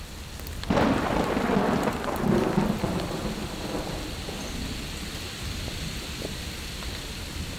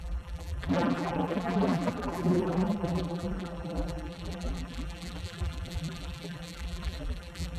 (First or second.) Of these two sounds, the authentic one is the first